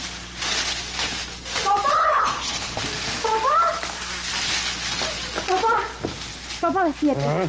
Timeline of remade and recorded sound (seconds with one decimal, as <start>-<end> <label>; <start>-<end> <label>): 0.0-1.9 recorded; 1.9-2.8 remade; 2.8-7.5 recorded